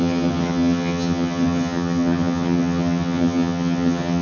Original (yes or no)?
no